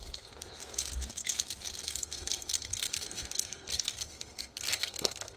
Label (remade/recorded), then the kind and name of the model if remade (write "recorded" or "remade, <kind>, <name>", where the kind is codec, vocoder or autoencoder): remade, codec, SNAC